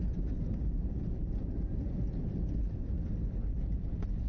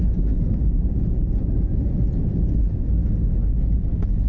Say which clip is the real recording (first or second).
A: second